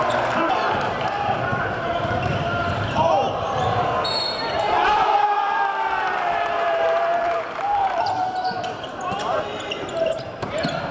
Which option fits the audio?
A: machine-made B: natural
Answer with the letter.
A